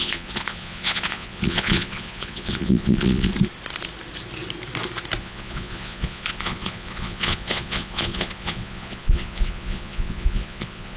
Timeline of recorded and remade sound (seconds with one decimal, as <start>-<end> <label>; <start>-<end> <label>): 0.0-3.3 remade; 3.3-5.2 recorded; 5.2-11.0 remade